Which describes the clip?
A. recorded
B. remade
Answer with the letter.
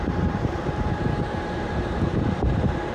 B